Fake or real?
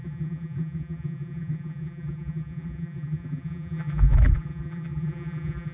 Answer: fake